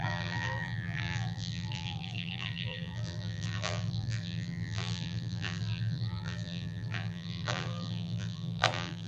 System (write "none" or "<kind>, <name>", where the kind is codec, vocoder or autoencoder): vocoder, BigVGAN v2